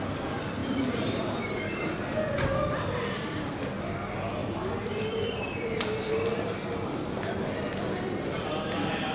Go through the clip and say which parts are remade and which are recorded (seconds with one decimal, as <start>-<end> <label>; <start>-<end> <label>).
0.0-0.6 recorded; 0.6-1.3 remade; 1.3-4.4 recorded; 4.4-8.5 remade; 8.5-9.1 recorded